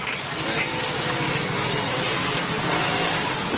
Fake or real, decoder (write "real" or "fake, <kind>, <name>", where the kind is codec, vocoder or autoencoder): real